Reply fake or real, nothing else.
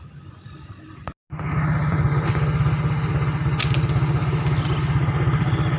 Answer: real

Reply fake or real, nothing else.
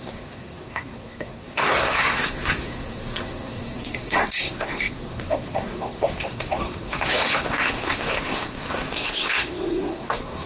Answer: fake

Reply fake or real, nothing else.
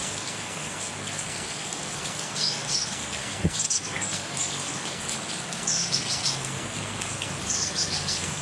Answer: fake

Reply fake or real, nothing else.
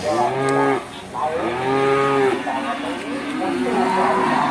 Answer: real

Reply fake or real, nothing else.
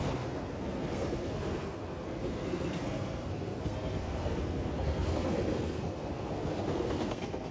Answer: fake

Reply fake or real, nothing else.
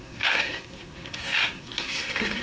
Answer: fake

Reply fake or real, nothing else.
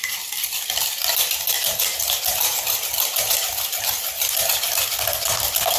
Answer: real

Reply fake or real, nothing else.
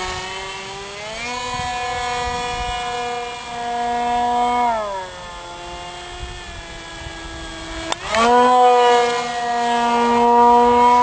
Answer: real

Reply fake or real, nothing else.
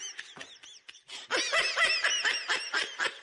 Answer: real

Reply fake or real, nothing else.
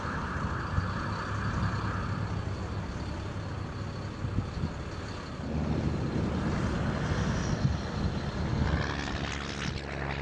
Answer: real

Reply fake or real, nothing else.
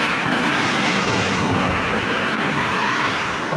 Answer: fake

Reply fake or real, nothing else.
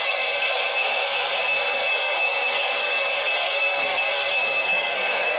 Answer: fake